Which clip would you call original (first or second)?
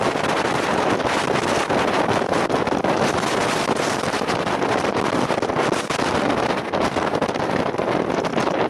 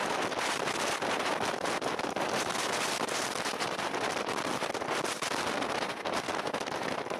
first